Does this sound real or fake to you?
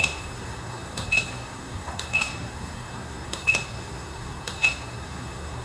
fake